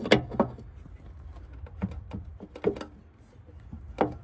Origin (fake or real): real